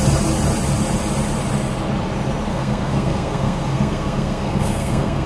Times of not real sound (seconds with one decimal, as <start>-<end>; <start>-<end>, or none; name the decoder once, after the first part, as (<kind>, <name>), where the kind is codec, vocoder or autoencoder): 2.5-5.3 (codec, SNAC)

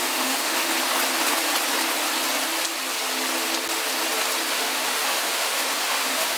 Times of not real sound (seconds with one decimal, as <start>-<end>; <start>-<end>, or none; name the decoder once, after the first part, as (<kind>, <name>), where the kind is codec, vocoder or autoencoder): 0.0-0.7 (autoencoder, DAC-VAE); 4.5-6.4